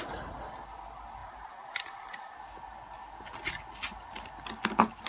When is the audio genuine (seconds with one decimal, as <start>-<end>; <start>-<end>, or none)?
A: 0.0-5.1